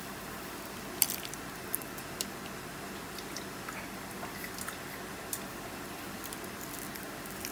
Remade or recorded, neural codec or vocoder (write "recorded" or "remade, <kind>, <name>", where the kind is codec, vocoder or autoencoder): recorded